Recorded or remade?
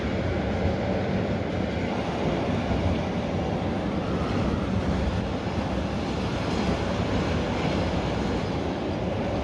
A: recorded